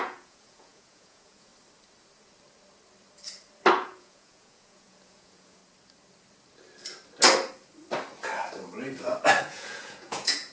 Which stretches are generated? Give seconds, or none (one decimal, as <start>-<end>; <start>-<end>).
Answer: 0.0-1.5; 3.7-5.6; 9.4-10.5